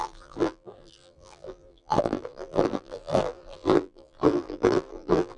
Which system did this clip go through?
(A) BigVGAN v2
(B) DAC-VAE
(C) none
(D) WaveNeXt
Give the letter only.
A